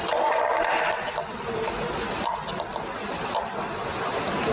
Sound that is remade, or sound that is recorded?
recorded